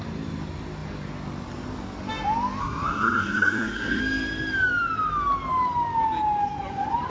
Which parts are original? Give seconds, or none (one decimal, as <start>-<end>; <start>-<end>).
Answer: 0.0-2.6; 4.0-7.1